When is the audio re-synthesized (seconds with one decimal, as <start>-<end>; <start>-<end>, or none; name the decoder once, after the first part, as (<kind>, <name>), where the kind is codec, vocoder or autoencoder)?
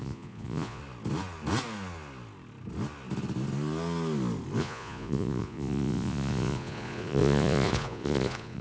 0.0-0.8 (vocoder, Vocos); 4.6-8.6